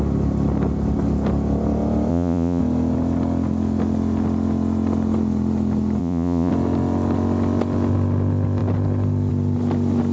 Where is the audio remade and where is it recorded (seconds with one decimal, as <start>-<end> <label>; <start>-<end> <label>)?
0.0-2.1 recorded; 2.1-2.6 remade; 2.6-6.0 recorded; 6.0-6.5 remade; 6.5-10.1 recorded

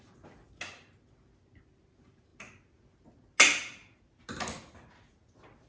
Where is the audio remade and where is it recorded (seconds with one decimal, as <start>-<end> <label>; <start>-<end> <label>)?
0.0-5.7 recorded

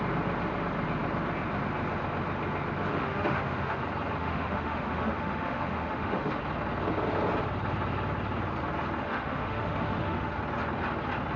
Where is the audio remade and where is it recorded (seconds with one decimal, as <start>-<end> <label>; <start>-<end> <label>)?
0.0-2.9 recorded; 2.9-3.8 remade; 3.8-4.2 recorded; 4.2-6.4 remade; 6.4-9.0 recorded; 9.0-10.4 remade; 10.4-11.4 recorded

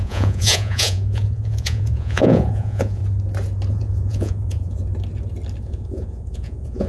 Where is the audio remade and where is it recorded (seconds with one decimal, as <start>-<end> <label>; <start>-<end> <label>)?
0.0-3.0 remade; 3.0-3.7 recorded; 3.7-4.8 remade; 4.8-5.6 recorded; 5.6-6.9 remade